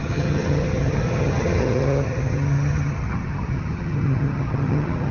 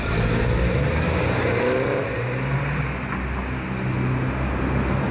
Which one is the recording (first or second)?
second